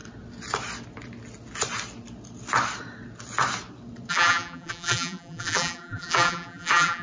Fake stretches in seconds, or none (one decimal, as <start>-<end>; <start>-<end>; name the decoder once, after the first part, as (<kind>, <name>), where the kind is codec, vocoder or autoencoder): 4.1-7.0 (vocoder, BigVGAN v2)